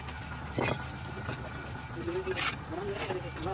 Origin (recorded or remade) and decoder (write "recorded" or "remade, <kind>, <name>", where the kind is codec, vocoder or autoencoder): recorded